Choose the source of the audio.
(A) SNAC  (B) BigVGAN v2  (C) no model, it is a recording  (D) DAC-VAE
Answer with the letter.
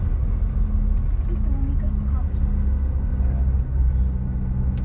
C